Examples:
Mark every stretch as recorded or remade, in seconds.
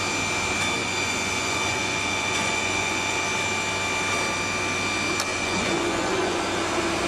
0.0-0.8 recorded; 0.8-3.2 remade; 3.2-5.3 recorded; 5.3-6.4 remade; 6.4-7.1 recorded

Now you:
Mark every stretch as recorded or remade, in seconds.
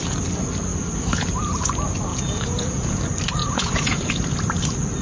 0.0-2.1 recorded; 2.1-3.0 remade; 3.0-3.4 recorded; 3.4-4.1 remade; 4.1-5.0 recorded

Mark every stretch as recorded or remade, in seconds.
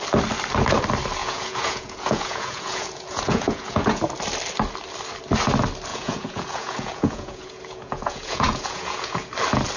0.0-1.2 recorded; 1.2-4.0 remade; 4.0-5.9 recorded; 5.9-9.3 remade; 9.3-9.8 recorded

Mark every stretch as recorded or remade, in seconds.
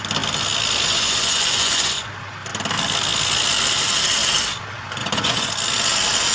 0.0-0.9 recorded; 0.9-2.1 remade; 2.1-5.0 recorded; 5.0-5.5 remade; 5.5-6.3 recorded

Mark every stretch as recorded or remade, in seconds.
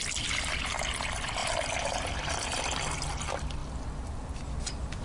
0.0-5.0 recorded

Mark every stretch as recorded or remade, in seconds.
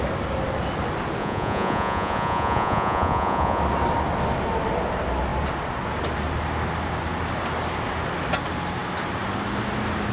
0.0-1.2 recorded; 1.2-3.6 remade; 3.6-10.1 recorded